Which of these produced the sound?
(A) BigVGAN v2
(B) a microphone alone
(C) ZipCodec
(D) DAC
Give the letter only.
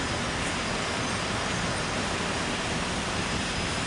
B